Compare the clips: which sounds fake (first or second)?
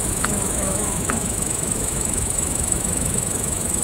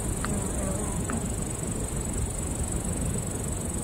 first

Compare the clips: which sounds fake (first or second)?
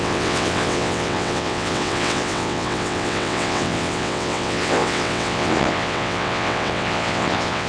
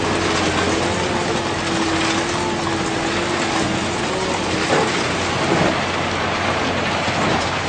first